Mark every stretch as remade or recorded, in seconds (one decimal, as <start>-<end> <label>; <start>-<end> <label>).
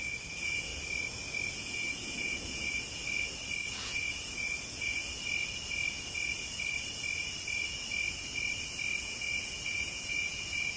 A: 0.0-0.7 remade; 0.7-1.5 recorded; 1.5-3.0 remade; 3.0-3.8 recorded; 3.8-5.0 remade; 5.0-9.0 recorded; 9.0-10.8 remade